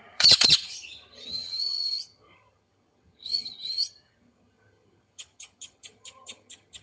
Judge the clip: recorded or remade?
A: remade